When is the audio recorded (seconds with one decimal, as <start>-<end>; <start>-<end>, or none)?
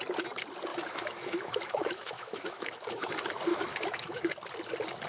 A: 0.0-0.7; 3.1-3.5; 4.3-5.1